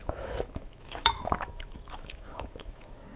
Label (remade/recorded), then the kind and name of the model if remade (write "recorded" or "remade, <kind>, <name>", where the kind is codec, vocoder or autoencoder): remade, autoencoder, DAC-VAE